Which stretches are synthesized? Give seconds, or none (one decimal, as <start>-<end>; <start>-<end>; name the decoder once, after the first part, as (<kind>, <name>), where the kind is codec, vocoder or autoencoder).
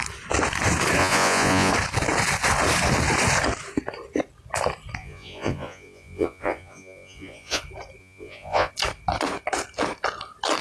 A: 1.0-1.7 (vocoder, Vocos); 5.0-7.6; 8.0-8.7